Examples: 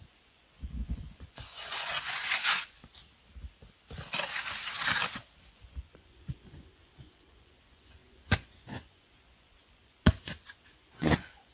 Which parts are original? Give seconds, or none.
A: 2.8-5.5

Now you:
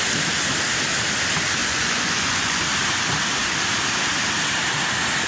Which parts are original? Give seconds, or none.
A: 0.0-1.6; 2.6-5.3

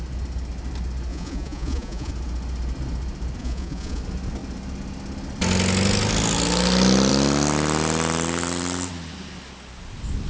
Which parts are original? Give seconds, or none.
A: 0.0-1.1; 2.1-3.4; 4.0-10.3

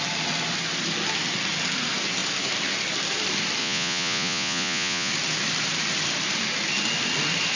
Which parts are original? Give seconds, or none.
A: 0.0-3.6; 5.1-7.6

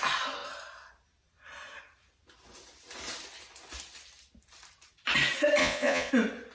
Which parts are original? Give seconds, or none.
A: 0.0-5.6; 6.1-6.5